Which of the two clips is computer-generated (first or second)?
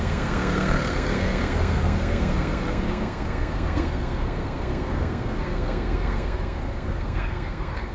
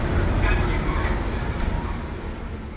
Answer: first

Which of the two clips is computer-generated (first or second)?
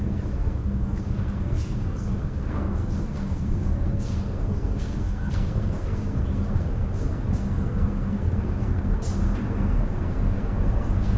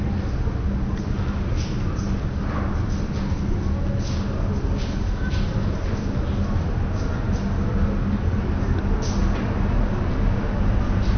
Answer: first